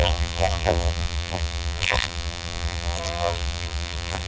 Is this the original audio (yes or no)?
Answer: no